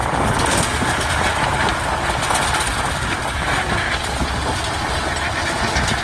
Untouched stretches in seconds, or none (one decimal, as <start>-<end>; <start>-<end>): 1.1-3.2; 3.9-6.0